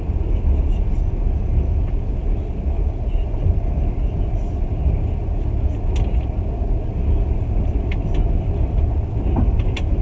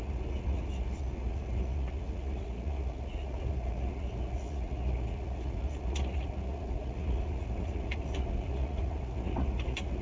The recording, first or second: first